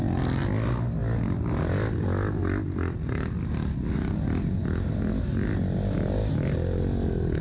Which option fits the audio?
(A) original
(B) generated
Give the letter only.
A